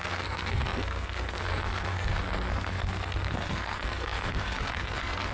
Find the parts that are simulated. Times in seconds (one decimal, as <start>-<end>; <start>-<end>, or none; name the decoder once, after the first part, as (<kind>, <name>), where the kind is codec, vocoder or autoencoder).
0.0-5.3 (codec, SNAC)